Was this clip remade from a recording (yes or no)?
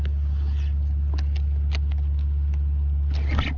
no